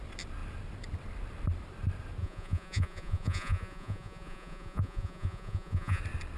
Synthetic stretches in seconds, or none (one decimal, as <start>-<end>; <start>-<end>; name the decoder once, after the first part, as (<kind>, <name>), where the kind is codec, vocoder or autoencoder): 2.2-6.0 (vocoder, Vocos)